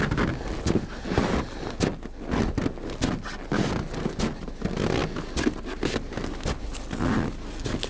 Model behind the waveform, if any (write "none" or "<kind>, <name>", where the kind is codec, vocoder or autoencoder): none